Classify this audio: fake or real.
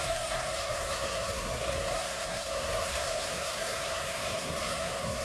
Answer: fake